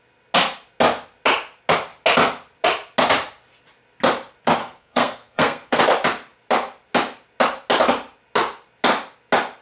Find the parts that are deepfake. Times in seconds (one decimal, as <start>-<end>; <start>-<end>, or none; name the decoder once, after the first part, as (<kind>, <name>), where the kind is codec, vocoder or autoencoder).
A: 4.6-5.8 (codec, SNAC)